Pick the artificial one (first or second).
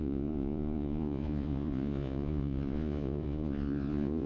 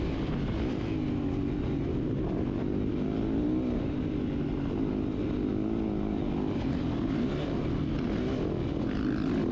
first